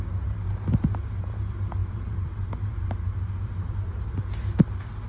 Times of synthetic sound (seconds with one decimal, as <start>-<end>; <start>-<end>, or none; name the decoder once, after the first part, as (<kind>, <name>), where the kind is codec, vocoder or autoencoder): 1.8-3.9 (vocoder, BigVGAN v2)